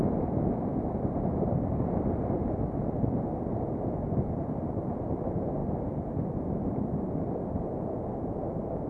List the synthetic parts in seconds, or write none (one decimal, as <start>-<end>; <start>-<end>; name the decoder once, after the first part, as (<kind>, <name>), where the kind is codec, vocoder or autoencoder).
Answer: 0.7-2.8 (vocoder, BigVGAN v2); 5.6-6.2